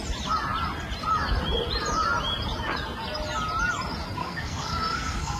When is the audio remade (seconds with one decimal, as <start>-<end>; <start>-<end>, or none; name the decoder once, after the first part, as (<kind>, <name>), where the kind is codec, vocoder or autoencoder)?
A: 4.2-5.4 (codec, SNAC)